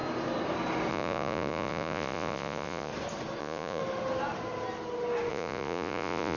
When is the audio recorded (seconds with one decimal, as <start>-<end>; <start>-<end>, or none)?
0.0-0.9; 2.9-3.4; 3.8-5.3